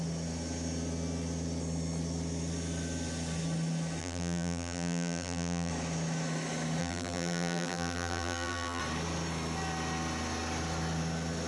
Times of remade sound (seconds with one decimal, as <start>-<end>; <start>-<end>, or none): 4.0-5.7; 6.8-8.8